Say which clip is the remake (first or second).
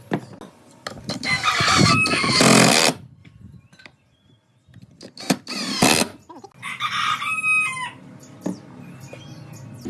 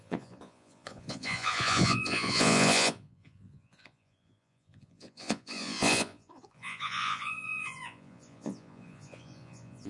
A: second